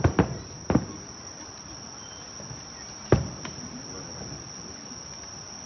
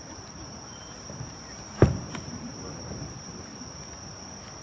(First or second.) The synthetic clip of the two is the second